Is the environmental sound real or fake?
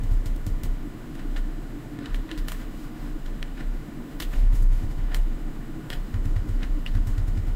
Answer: fake